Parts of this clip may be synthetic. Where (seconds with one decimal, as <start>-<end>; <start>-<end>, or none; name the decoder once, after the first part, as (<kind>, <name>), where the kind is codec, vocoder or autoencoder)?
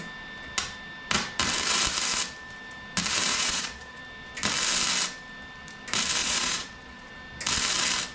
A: 3.3-4.0 (vocoder, Vocos); 6.2-7.1